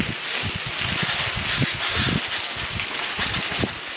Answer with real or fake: real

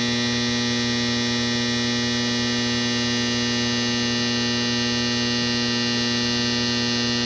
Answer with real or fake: real